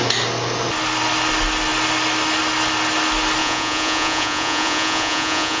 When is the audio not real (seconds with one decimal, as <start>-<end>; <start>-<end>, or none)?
3.4-5.6